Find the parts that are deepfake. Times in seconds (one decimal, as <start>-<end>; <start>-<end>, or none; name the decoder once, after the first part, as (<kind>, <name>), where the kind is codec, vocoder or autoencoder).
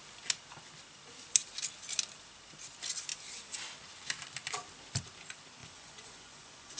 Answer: 5.6-6.8 (vocoder, Vocos)